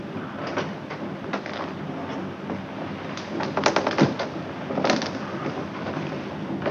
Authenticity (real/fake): real